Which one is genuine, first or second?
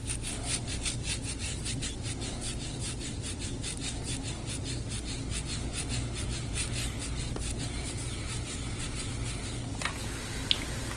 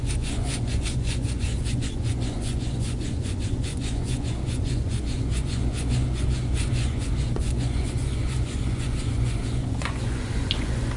first